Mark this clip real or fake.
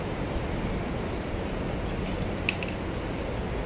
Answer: real